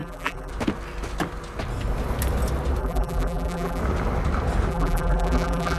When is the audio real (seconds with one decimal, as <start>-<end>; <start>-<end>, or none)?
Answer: 0.5-2.8; 3.8-4.7